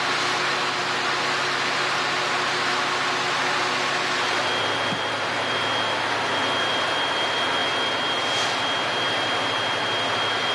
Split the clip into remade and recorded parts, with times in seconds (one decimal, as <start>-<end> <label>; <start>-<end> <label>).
0.0-10.5 recorded